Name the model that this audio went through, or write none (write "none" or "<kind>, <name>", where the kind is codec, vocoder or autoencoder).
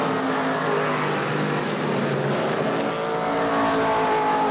none